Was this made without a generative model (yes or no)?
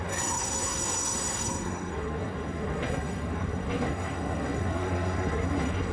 no